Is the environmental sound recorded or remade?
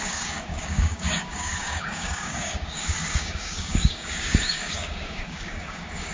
remade